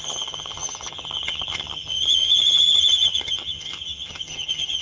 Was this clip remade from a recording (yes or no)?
yes